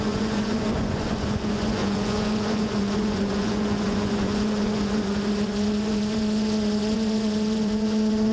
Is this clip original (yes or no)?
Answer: no